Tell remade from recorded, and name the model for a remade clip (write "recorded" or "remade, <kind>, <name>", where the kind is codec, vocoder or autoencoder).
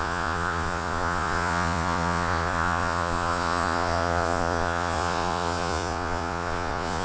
remade, vocoder, Vocos